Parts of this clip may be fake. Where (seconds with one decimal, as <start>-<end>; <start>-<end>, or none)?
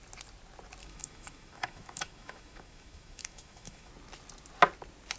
0.8-3.9